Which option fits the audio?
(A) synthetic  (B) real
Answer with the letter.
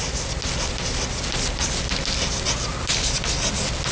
B